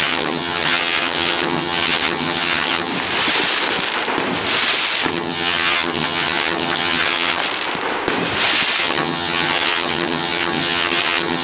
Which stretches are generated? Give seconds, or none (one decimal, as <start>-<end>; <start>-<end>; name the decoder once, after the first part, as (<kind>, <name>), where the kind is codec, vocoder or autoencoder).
0.0-2.9 (vocoder, HiFi-GAN); 5.1-7.4; 8.8-11.4